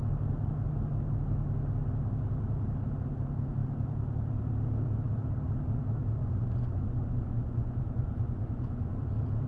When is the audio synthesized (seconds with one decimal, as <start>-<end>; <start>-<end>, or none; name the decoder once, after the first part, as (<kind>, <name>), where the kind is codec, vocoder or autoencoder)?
6.2-9.0 (vocoder, Vocos)